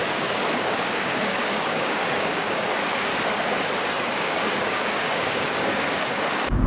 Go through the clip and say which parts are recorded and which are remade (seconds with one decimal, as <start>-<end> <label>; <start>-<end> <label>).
0.0-3.1 remade; 3.1-4.1 recorded; 4.1-6.7 remade